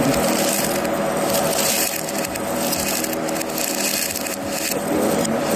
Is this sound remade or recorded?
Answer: remade